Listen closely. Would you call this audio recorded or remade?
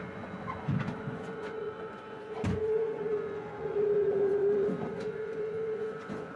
remade